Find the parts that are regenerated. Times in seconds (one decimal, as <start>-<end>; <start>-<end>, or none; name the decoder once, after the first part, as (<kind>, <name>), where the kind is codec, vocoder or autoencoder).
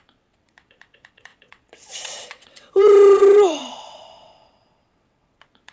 0.0-5.7 (vocoder, WaveNeXt)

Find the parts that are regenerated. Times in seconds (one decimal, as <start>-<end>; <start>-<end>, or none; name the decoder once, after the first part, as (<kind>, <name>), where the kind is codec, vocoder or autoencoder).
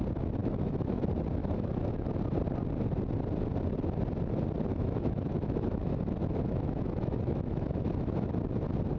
0.4-1.0 (autoencoder, DAC-VAE); 1.4-2.1; 4.7-8.3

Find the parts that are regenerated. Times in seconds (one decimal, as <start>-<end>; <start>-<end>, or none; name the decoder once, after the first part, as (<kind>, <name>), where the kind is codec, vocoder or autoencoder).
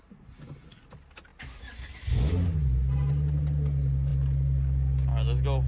none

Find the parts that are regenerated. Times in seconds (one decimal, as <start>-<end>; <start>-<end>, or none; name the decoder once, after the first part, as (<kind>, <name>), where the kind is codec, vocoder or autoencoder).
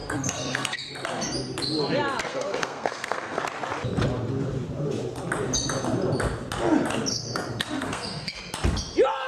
0.0-0.9 (codec, SNAC); 2.3-3.4; 7.1-8.4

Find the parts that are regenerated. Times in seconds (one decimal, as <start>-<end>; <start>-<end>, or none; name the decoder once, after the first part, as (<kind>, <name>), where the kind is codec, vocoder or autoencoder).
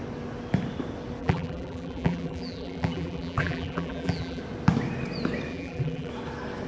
1.2-4.4 (vocoder, BigVGAN v2); 5.5-6.1